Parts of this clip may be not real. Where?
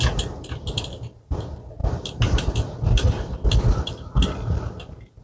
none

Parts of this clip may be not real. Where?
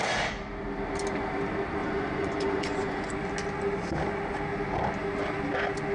1.8-3.1 (vocoder, Vocos)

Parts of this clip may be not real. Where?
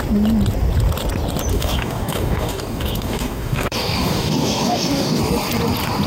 1.5-5.2 (codec, DAC)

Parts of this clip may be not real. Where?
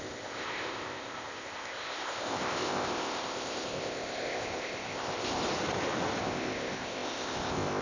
0.0-5.4 (codec, ZipCodec); 6.2-7.8